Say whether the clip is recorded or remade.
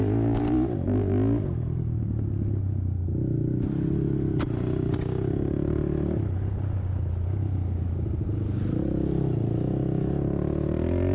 recorded